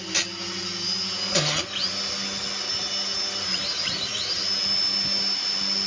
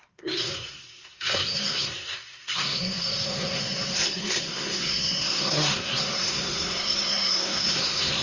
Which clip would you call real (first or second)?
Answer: first